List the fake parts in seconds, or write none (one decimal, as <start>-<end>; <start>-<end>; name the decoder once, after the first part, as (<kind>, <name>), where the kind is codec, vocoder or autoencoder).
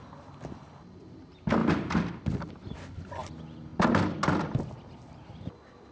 none